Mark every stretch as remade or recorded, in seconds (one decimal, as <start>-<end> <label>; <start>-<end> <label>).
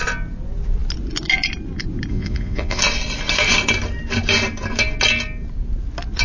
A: 0.0-2.1 recorded; 2.1-2.8 remade; 2.8-6.2 recorded